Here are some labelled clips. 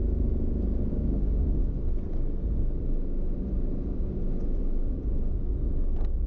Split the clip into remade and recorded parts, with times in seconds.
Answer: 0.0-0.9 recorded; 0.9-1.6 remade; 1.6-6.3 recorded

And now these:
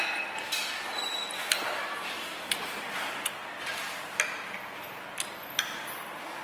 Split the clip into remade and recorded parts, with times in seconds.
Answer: 0.0-1.2 recorded; 1.2-2.5 remade; 2.5-6.4 recorded